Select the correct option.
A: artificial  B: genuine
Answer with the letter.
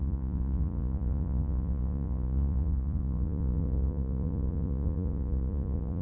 A